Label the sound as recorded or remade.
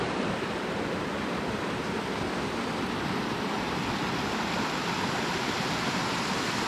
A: recorded